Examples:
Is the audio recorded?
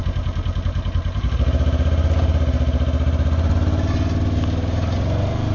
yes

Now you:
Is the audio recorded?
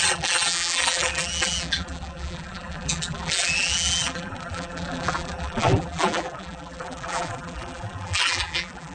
no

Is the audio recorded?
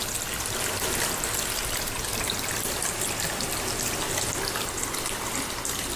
yes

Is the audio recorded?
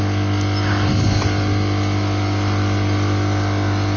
yes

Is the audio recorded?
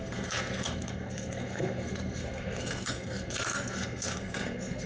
no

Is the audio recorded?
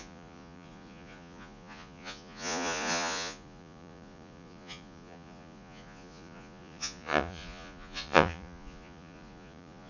no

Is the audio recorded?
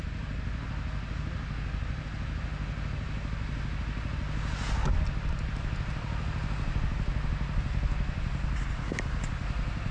yes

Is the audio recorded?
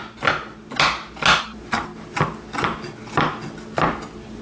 yes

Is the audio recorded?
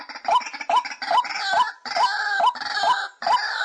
yes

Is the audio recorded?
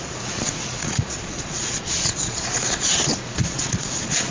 no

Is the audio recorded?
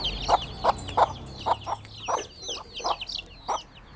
yes